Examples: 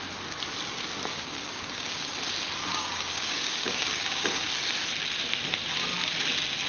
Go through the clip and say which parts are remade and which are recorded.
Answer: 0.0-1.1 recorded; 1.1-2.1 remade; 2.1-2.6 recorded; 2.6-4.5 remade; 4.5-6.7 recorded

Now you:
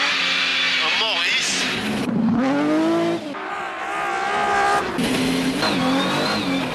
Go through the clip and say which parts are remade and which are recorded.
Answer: 0.0-6.7 recorded

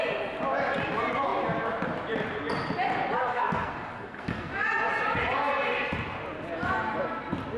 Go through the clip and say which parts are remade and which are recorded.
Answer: 0.0-3.3 recorded; 3.3-4.5 remade; 4.5-7.6 recorded

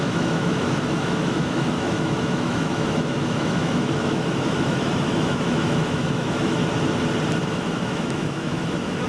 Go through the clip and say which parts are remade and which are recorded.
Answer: 0.0-6.6 remade; 6.6-7.4 recorded; 7.4-9.1 remade

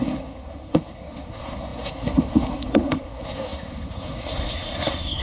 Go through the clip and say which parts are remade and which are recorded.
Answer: 0.0-5.2 remade

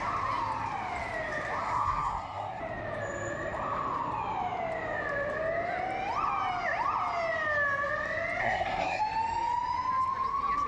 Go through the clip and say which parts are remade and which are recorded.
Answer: 0.0-1.6 recorded; 1.6-2.6 remade; 2.6-8.4 recorded; 8.4-9.0 remade; 9.0-10.7 recorded

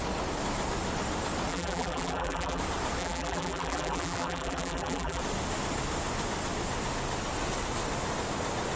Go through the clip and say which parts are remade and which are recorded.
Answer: 0.0-1.5 recorded; 1.5-2.6 remade; 2.6-3.0 recorded; 3.0-5.2 remade; 5.2-8.8 recorded